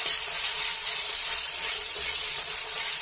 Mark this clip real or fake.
fake